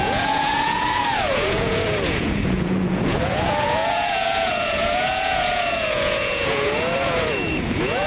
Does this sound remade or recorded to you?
remade